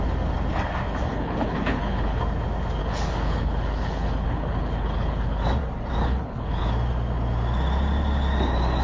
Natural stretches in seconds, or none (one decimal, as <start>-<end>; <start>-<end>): 0.0-1.0; 2.2-2.8; 5.4-6.0; 6.7-8.8